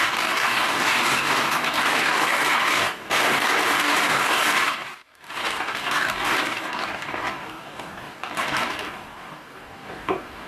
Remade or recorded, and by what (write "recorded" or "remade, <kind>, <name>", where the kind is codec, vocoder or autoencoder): remade, codec, DAC